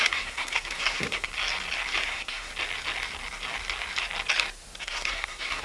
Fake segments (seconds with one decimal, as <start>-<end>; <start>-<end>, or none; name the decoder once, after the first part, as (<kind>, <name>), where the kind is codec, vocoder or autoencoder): 0.0-1.3 (codec, SNAC); 2.1-2.5; 4.8-5.6